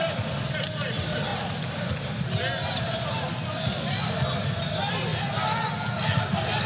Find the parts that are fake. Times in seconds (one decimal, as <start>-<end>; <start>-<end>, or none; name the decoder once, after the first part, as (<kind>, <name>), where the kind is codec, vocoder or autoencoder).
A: none